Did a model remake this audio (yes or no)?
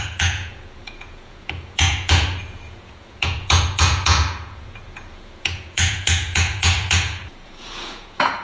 yes